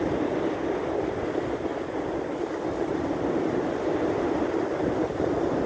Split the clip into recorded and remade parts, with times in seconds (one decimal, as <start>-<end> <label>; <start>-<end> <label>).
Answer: 0.0-5.7 recorded